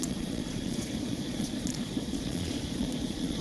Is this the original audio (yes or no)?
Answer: no